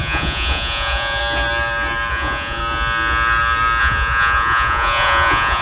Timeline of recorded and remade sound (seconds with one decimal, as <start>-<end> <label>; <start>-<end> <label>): 0.0-1.2 remade; 1.2-2.1 recorded; 2.1-2.6 remade; 2.6-3.8 recorded; 3.8-5.6 remade